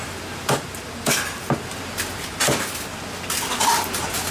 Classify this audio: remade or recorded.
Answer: recorded